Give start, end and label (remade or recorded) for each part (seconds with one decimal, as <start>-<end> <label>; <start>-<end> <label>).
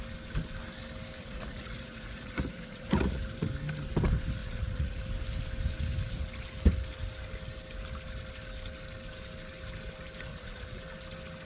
0.0-1.2 recorded; 1.2-3.2 remade; 3.2-4.4 recorded; 4.4-5.0 remade; 5.0-10.3 recorded; 10.3-10.8 remade; 10.8-11.4 recorded